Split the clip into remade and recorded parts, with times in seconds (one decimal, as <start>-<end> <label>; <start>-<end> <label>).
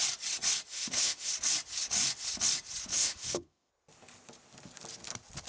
0.0-0.7 recorded; 0.7-1.3 remade; 1.3-2.9 recorded; 2.9-3.7 remade; 3.7-5.5 recorded